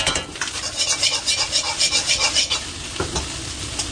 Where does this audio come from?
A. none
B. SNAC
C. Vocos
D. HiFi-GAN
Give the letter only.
A